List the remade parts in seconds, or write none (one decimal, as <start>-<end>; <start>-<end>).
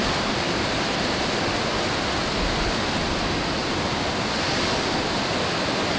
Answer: 3.6-4.1